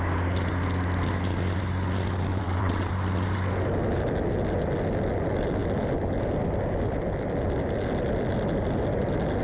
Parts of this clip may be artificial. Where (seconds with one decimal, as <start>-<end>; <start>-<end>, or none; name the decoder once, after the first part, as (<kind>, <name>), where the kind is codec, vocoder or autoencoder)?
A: 2.3-2.9 (vocoder, WaveNeXt)

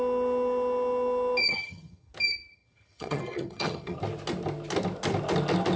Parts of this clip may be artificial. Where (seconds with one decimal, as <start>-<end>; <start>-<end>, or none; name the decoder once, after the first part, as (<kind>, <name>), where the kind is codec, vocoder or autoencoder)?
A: 1.4-2.1 (vocoder, HiFi-GAN); 2.5-4.0

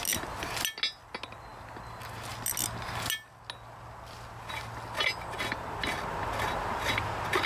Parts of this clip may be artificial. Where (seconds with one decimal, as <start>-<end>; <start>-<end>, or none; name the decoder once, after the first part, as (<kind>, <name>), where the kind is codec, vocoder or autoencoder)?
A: none